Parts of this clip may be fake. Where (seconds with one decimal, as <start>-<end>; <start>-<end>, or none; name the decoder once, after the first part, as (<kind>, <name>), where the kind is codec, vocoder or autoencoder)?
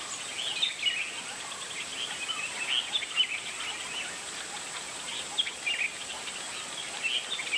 none